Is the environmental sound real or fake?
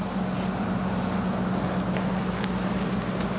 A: real